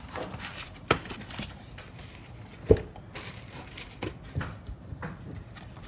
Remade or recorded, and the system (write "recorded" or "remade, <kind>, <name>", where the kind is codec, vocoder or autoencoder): remade, vocoder, BigVGAN v2